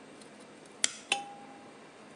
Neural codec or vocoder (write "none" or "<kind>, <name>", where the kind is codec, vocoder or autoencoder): none